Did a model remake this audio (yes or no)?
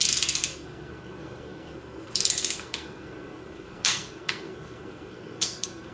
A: yes